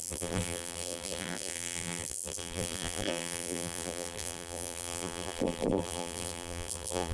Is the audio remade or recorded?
remade